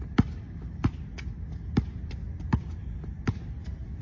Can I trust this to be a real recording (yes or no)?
yes